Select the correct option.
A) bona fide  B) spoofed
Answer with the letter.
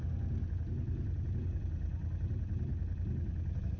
A